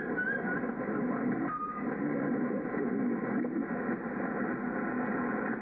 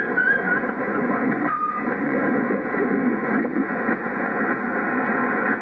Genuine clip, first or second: first